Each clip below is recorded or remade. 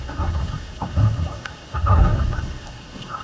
remade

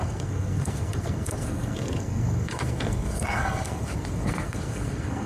remade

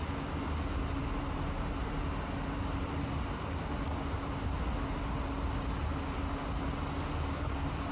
recorded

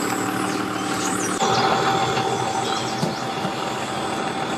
recorded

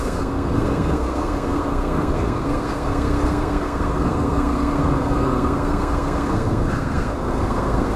remade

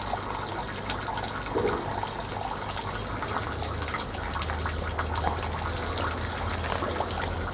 recorded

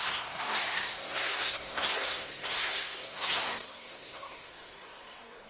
remade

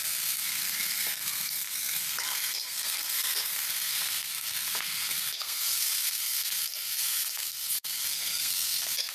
remade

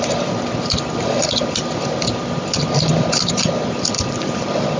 recorded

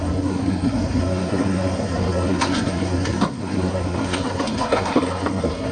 remade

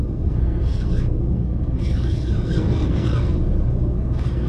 remade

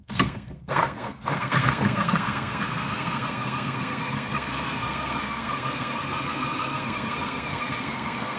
remade